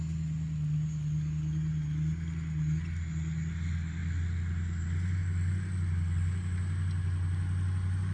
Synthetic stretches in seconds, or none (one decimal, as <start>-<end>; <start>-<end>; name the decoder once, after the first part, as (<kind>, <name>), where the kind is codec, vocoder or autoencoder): none

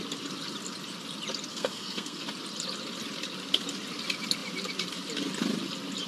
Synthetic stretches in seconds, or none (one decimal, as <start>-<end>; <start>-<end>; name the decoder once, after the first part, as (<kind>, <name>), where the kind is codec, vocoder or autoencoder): 1.5-2.2 (codec, SNAC)

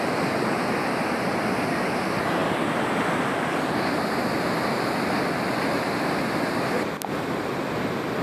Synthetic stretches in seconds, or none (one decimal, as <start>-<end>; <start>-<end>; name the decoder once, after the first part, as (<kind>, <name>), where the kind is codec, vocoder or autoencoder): none